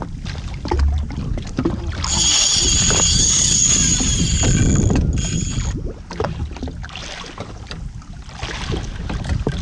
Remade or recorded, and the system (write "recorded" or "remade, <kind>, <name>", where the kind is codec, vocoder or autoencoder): recorded